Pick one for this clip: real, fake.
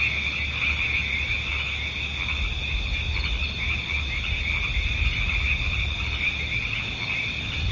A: real